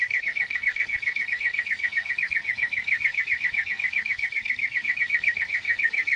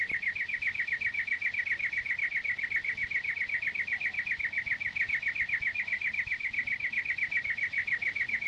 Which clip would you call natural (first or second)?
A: second